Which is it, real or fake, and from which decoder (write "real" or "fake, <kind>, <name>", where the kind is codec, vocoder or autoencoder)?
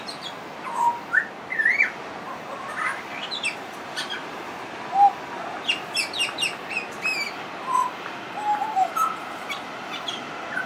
real